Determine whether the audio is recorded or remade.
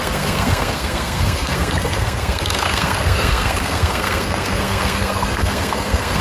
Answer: remade